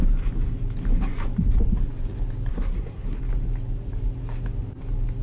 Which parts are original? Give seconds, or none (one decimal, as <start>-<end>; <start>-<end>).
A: 0.0-2.5; 3.2-5.2